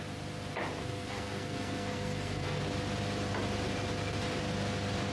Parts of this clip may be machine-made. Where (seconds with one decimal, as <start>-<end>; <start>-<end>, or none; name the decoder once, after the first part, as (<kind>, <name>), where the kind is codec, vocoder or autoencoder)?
0.8-2.6 (codec, SNAC)

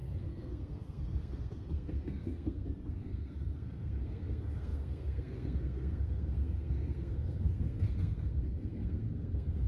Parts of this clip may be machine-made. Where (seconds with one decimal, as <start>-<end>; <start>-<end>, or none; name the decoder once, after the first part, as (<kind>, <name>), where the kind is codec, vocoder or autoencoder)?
0.0-9.7 (codec, SNAC)